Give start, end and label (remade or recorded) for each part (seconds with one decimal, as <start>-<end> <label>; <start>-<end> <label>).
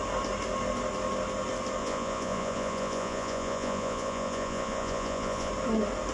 0.0-1.8 recorded; 1.8-5.5 remade; 5.5-6.1 recorded